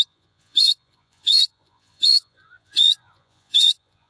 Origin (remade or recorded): remade